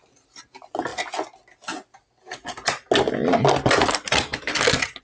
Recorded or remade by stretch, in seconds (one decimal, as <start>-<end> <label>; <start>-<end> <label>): 0.0-5.0 recorded

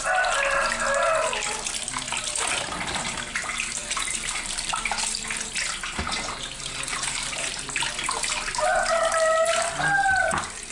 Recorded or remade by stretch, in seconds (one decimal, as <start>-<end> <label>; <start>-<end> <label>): 0.0-3.8 recorded; 3.8-5.2 remade; 5.2-6.9 recorded; 6.9-7.6 remade; 7.6-10.7 recorded

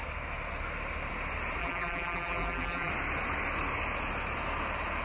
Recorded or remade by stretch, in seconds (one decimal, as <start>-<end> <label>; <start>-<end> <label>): 0.0-1.6 recorded; 1.6-2.9 remade; 2.9-5.0 recorded

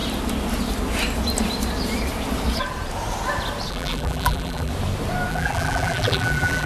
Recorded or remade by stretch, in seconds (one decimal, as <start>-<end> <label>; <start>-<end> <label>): 0.0-3.7 recorded; 3.7-4.7 remade; 4.7-5.3 recorded; 5.3-6.7 remade

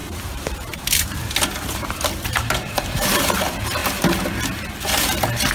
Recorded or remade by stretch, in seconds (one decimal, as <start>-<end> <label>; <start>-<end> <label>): 0.0-3.3 remade; 3.3-5.5 recorded